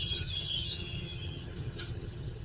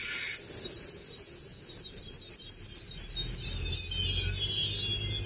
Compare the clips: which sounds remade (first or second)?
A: first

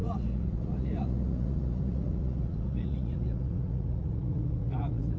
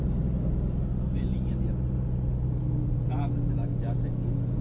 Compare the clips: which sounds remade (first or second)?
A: first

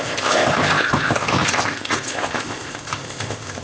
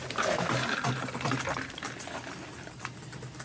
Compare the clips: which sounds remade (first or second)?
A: first